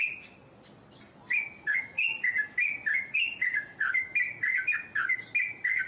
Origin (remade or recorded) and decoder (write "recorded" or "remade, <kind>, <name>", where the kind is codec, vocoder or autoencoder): recorded